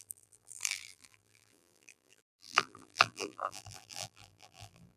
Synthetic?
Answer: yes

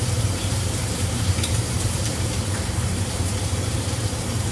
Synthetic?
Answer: yes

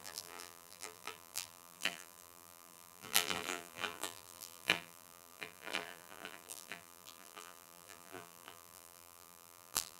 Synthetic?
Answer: yes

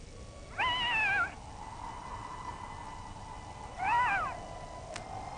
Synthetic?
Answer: no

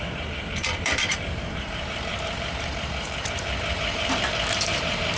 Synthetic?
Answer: yes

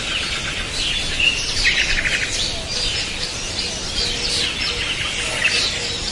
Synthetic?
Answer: no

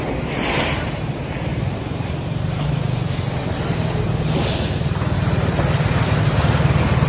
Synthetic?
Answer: no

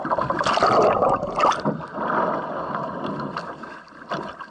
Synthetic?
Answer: no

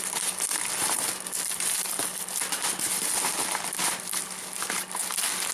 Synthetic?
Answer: no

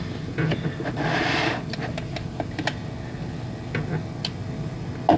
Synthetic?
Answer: no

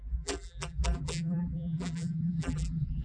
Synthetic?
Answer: yes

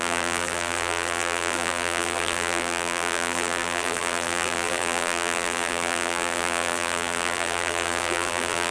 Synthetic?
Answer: yes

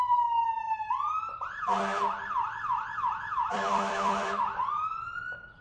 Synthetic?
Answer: yes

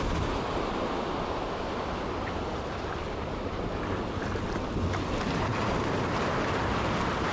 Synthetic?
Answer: no